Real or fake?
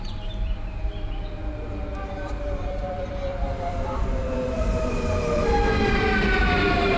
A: fake